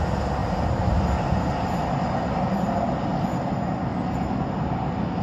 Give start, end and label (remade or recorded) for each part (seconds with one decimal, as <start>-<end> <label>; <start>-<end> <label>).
0.0-5.2 recorded